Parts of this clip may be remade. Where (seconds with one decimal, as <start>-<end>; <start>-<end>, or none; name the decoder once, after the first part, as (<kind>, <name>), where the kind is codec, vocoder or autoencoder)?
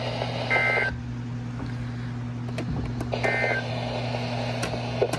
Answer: none